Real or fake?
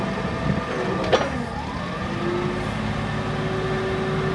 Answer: real